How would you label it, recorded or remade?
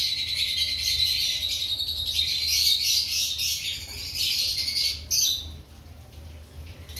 recorded